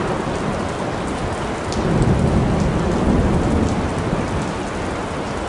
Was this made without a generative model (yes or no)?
yes